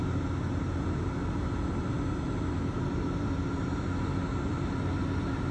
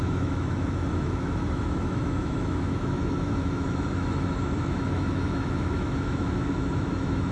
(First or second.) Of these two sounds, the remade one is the second